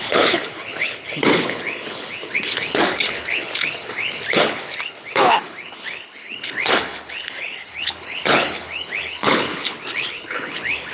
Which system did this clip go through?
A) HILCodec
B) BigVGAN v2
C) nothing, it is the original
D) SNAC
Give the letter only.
A